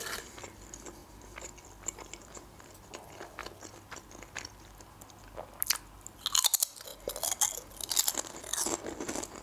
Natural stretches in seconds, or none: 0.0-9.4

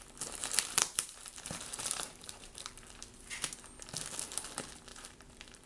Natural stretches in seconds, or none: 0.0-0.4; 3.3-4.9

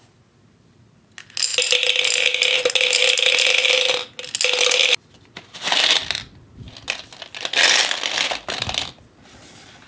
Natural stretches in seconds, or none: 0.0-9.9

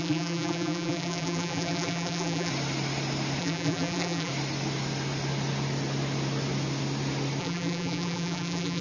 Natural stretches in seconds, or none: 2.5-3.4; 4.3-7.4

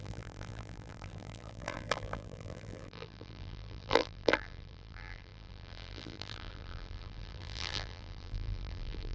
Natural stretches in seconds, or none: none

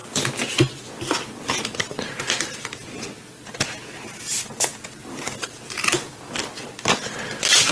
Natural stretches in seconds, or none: 0.0-5.0; 6.1-7.7

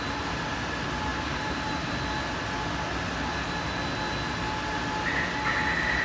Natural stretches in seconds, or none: 0.0-1.1; 1.9-6.0